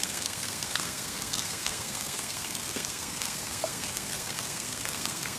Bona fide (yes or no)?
no